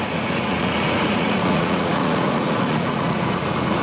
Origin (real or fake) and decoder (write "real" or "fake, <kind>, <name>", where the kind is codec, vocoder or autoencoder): fake, vocoder, Vocos